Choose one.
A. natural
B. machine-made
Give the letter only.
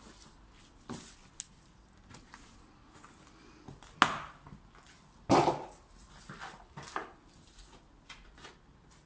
A